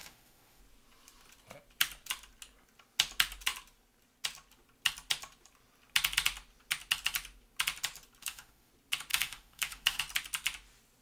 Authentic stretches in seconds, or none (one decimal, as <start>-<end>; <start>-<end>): 0.6-8.2; 8.7-9.1; 10.0-11.0